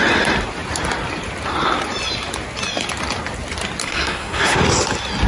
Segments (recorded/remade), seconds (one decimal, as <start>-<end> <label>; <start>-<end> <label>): 0.0-3.8 recorded; 3.8-4.6 remade; 4.6-5.3 recorded